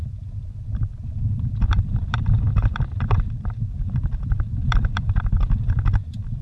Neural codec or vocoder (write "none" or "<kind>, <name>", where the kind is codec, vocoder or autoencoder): vocoder, BigVGAN v2